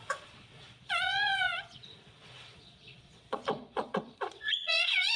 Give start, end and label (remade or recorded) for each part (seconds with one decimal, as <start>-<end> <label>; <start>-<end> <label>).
0.0-5.2 remade